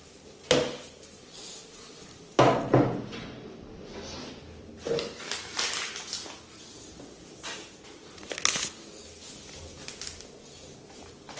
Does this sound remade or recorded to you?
recorded